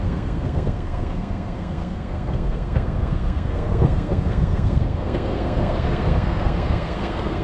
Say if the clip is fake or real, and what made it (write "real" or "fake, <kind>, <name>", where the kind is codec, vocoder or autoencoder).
fake, codec, SNAC